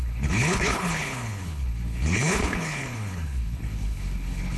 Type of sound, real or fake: fake